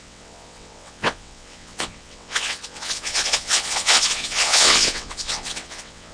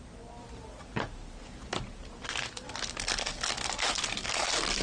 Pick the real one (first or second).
second